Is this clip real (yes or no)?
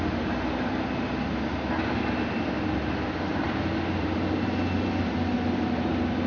yes